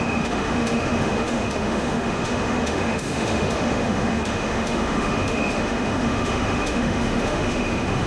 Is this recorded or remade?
remade